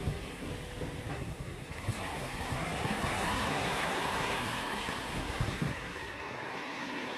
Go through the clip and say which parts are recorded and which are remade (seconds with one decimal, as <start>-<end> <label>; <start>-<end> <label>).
0.0-0.5 remade; 0.5-1.1 recorded; 1.1-7.2 remade